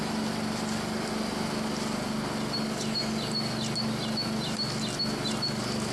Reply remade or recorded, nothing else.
recorded